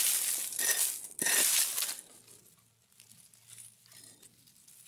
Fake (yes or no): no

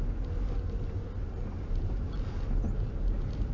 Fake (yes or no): no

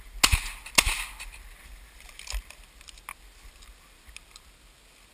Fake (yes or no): no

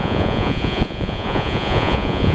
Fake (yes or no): yes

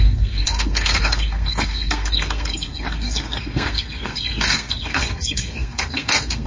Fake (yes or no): yes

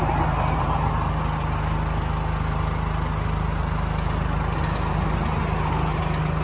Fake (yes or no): no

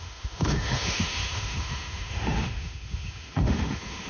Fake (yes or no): yes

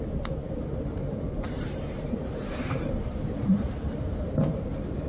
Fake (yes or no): yes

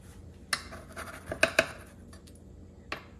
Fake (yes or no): no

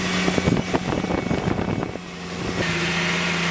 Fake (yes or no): no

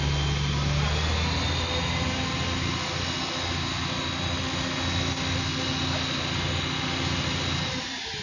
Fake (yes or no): no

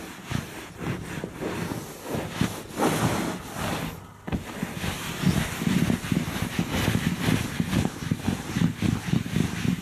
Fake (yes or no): no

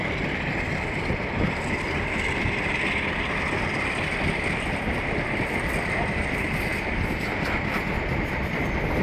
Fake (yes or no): no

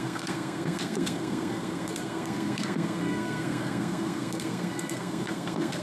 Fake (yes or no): yes